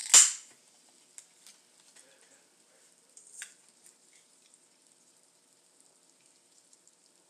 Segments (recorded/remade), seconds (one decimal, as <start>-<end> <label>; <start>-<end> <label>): 0.0-3.1 recorded; 3.1-7.3 remade